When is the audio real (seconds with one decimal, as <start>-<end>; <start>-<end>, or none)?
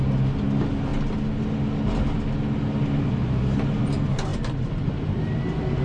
0.0-5.8